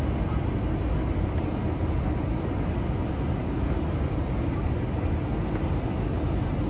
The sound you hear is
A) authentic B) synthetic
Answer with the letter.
A